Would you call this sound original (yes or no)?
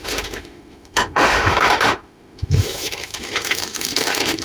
no